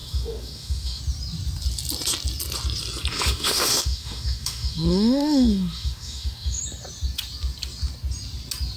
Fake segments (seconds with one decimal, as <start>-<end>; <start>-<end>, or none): 0.0-1.0; 3.1-6.6